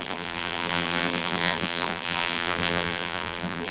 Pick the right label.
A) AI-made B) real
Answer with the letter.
A